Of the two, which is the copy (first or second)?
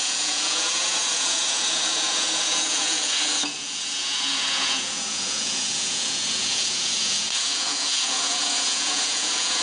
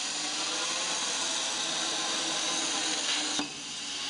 first